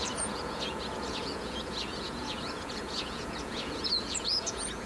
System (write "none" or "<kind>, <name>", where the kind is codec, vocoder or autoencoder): vocoder, Vocos